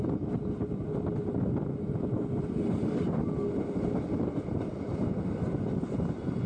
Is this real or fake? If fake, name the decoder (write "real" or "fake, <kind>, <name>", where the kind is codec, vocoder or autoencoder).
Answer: real